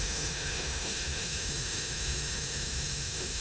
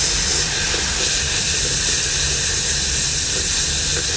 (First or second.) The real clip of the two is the second